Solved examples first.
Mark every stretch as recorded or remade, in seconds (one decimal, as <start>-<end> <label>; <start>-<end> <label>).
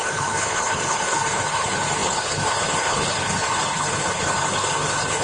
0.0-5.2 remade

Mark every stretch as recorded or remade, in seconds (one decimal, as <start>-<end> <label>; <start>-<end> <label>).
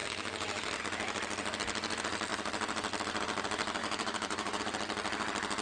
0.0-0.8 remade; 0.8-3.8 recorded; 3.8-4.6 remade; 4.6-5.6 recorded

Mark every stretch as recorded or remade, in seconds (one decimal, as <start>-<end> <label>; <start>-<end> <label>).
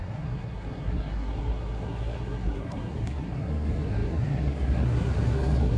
0.0-5.8 remade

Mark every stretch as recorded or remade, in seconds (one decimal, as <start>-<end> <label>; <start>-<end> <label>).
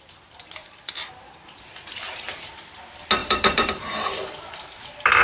0.0-0.6 recorded; 0.6-1.1 remade; 1.1-3.2 recorded; 3.2-3.8 remade; 3.8-5.2 recorded